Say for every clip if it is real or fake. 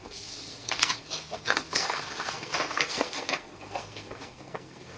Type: fake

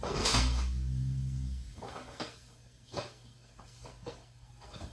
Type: fake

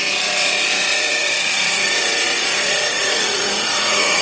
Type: fake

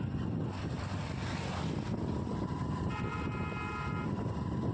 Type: real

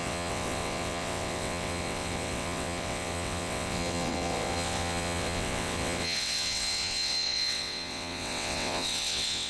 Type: fake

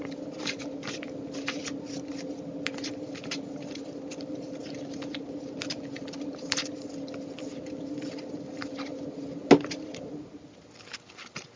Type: real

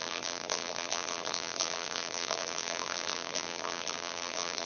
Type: fake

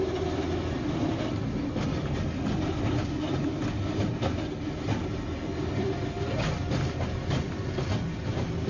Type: real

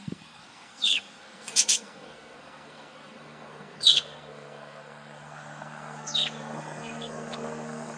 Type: fake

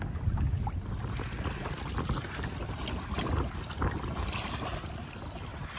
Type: real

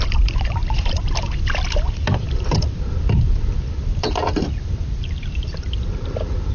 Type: fake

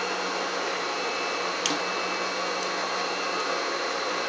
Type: real